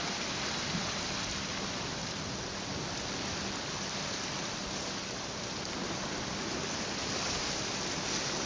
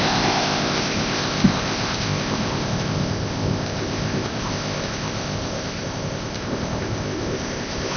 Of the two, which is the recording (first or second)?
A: first